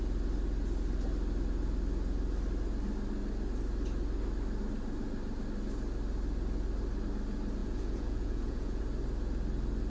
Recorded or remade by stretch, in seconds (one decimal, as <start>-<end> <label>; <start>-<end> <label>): 0.0-7.6 recorded; 7.6-8.8 remade; 8.8-9.9 recorded